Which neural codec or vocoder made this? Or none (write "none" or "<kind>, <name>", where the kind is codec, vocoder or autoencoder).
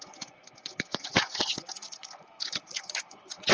vocoder, Vocos